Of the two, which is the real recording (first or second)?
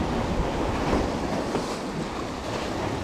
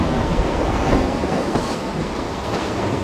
first